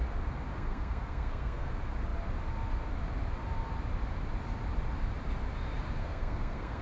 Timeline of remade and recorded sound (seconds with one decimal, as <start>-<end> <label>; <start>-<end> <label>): 0.0-0.5 recorded; 0.5-1.7 remade; 1.7-6.0 recorded; 6.0-6.8 remade